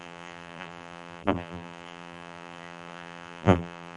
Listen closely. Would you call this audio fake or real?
fake